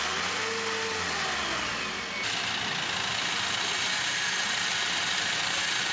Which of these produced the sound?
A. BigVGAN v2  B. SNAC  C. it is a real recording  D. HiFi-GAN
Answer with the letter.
C